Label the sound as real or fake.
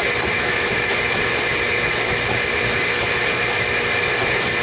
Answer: real